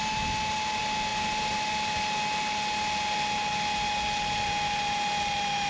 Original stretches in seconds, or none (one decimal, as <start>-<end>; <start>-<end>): 0.0-5.7